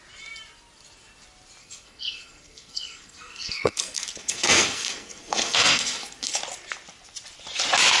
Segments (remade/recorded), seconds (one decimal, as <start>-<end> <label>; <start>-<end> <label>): 0.0-1.6 recorded; 1.6-6.4 remade; 6.4-8.0 recorded